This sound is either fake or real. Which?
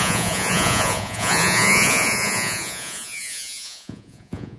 fake